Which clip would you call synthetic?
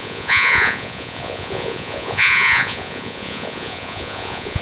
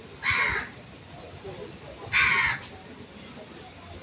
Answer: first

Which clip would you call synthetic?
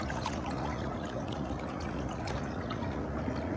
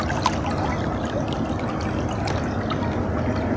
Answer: first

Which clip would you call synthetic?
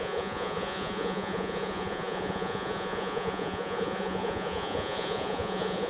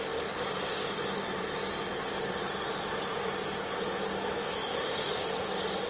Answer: first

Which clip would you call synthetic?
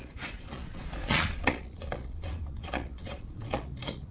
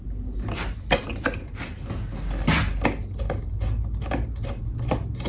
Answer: first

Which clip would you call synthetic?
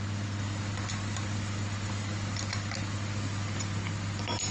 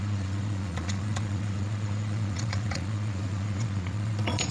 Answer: second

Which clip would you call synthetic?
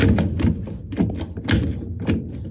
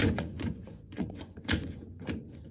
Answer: second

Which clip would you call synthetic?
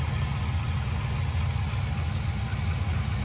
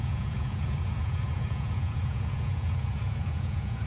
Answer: second